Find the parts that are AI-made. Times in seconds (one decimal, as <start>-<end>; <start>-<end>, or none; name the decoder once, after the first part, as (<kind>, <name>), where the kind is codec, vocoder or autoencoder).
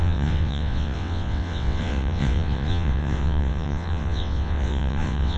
0.0-5.4 (vocoder, WaveNeXt)